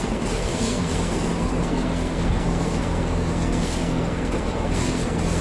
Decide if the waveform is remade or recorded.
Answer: remade